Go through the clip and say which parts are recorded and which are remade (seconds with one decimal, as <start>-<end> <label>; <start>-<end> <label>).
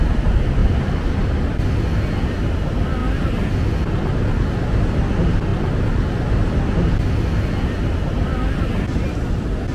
0.0-0.6 recorded; 0.6-1.2 remade; 1.2-9.7 recorded